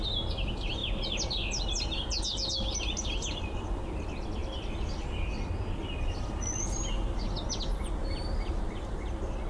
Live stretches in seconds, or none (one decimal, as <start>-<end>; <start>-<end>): 0.0-9.5